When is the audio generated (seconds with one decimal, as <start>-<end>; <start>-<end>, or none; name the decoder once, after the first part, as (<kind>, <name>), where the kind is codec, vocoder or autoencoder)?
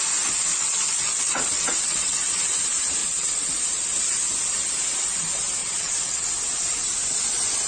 0.5-2.4 (vocoder, WaveNeXt); 3.0-3.6; 5.6-6.3